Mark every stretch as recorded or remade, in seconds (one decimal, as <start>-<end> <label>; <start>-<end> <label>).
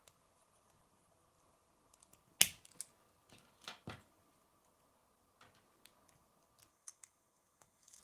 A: 0.0-6.7 recorded; 6.7-8.0 remade